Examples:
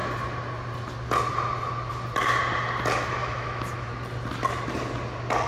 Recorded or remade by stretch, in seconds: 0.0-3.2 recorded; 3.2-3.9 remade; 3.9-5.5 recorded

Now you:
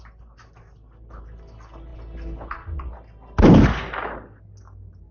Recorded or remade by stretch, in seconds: 0.0-5.1 recorded